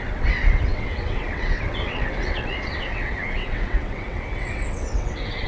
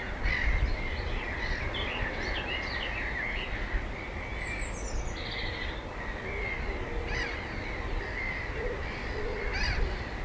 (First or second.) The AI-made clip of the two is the first